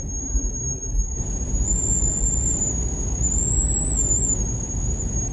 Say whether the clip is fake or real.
real